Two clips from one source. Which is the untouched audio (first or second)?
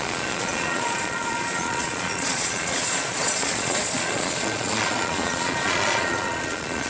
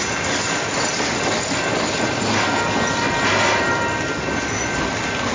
second